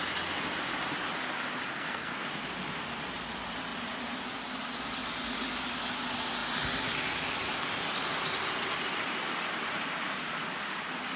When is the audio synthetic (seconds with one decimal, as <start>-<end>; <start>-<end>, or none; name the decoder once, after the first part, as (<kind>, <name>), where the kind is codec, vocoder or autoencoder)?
1.7-2.3 (codec, SNAC)